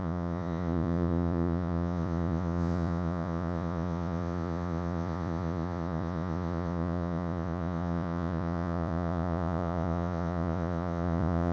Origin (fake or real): fake